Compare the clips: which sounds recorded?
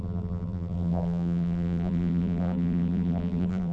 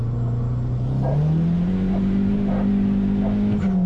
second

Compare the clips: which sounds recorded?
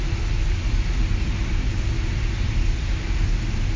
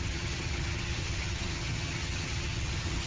first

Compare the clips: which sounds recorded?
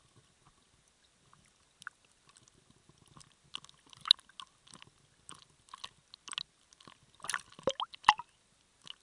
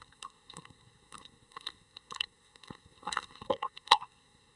first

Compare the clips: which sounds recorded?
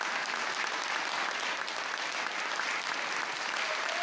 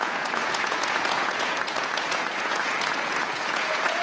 first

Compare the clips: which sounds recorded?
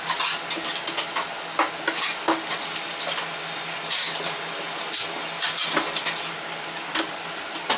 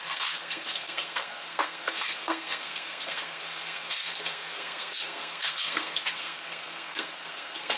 first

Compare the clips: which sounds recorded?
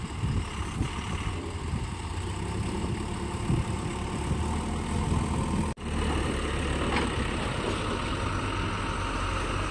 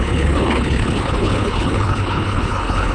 first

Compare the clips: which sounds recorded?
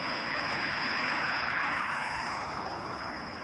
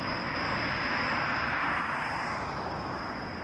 second